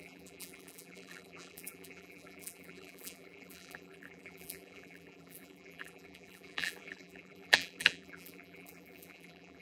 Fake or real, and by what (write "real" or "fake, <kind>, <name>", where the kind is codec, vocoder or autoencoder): fake, vocoder, BigVGAN v2